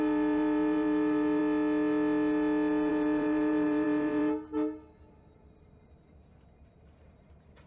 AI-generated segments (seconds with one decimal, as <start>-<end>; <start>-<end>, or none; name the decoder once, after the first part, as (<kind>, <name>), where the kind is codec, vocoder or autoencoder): 0.0-1.4 (vocoder, BigVGAN v2); 2.9-4.2; 5.1-7.7